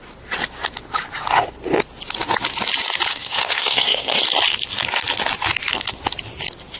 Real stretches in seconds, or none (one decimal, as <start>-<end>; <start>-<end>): 0.0-3.1; 4.2-6.8